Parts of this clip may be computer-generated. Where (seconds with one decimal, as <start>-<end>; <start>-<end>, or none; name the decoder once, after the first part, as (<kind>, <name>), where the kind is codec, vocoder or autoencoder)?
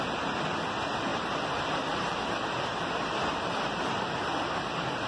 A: 1.1-2.9 (vocoder, BigVGAN v2); 3.3-4.2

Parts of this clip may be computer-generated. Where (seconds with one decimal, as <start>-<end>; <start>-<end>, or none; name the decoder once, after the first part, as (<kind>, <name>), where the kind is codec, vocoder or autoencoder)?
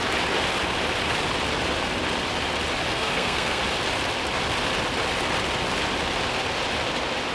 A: 2.8-3.6 (codec, SNAC)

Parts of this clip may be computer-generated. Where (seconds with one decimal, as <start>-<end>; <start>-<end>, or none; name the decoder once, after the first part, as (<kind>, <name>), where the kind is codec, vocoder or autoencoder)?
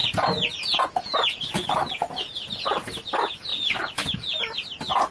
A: 0.0-3.1 (vocoder, Vocos); 3.5-4.4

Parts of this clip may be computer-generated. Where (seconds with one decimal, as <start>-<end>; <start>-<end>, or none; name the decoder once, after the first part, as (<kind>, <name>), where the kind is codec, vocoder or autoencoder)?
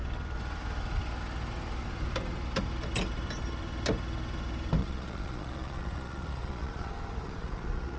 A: 4.8-8.0 (vocoder, Vocos)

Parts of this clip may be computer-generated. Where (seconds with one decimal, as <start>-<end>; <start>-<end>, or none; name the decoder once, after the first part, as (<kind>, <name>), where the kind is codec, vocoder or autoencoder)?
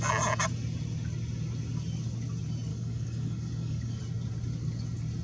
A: 2.7-4.0 (codec, DAC)